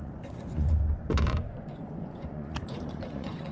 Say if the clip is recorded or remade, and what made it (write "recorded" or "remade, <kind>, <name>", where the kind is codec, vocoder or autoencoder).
remade, vocoder, Vocos